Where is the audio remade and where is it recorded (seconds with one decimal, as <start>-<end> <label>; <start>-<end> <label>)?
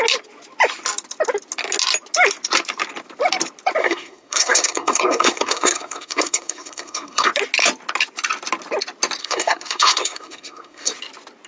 0.0-3.8 recorded; 3.8-7.3 remade; 7.3-9.2 recorded; 9.2-10.9 remade; 10.9-11.5 recorded